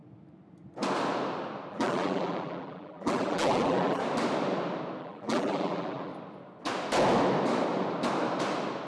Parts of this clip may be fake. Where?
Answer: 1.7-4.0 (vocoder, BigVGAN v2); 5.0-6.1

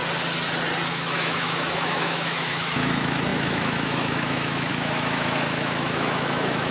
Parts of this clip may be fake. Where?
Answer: 0.9-6.7 (autoencoder, DAC-VAE)

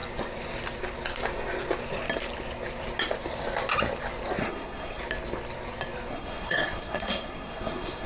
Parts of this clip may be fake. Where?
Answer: 4.4-5.0 (codec, SNAC); 6.1-8.1

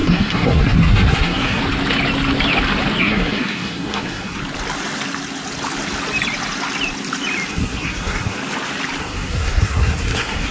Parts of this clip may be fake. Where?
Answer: 0.0-1.6 (codec, SNAC); 3.0-4.4; 7.5-8.4; 9.0-10.5

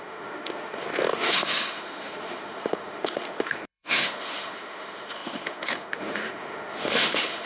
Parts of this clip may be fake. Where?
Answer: 0.0-7.5 (autoencoder, DAC-VAE)

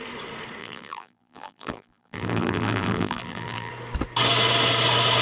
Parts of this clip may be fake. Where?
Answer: 0.6-3.7 (vocoder, BigVGAN v2)

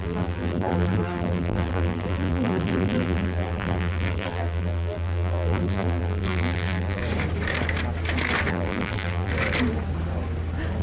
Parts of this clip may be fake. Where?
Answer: 0.0-7.0 (vocoder, BigVGAN v2); 8.5-9.3